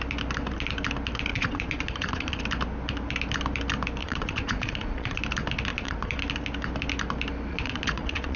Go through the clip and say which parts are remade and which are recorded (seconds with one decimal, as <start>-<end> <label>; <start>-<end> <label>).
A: 0.0-1.3 recorded; 1.3-2.4 remade; 2.4-4.0 recorded; 4.0-5.2 remade; 5.2-5.7 recorded; 5.7-6.2 remade; 6.2-7.5 recorded; 7.5-8.4 remade